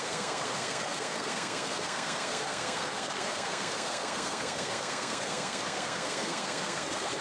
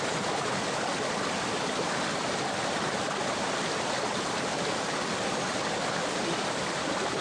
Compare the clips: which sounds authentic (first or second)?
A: second